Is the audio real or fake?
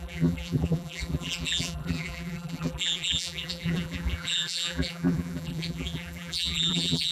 fake